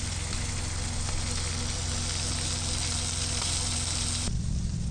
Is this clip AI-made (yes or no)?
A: no